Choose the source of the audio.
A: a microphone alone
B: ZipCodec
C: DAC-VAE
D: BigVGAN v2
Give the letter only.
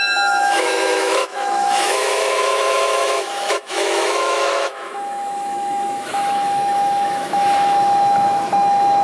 C